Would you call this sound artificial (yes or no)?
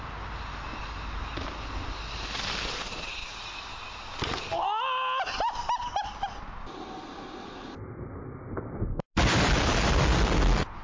no